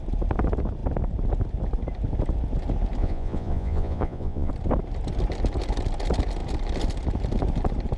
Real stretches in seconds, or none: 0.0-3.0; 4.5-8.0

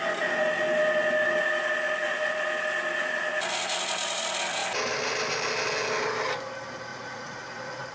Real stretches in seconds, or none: 0.0-6.9